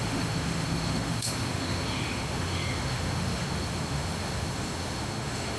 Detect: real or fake fake